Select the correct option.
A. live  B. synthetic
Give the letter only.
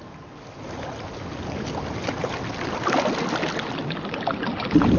A